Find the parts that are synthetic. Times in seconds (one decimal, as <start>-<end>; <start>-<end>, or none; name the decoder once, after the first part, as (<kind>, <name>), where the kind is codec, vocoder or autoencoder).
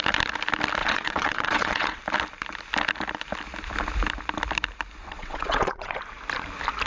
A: 0.8-2.0 (vocoder, WaveNeXt); 5.0-6.0